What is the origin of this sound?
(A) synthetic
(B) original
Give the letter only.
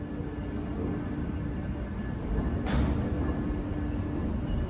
B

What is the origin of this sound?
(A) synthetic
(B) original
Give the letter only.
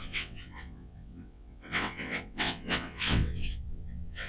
A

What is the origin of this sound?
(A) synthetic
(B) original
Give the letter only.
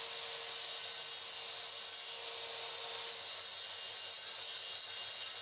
B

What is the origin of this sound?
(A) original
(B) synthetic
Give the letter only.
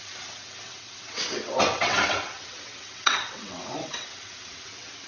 B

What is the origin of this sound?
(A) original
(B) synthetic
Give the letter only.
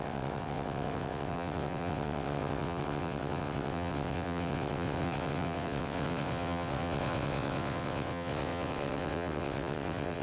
B